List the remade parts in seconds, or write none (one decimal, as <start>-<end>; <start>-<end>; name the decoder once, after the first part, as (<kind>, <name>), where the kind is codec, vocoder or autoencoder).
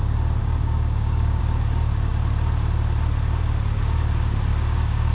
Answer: 0.4-1.4 (codec, DAC); 4.5-5.1